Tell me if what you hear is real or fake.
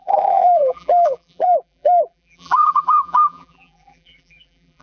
fake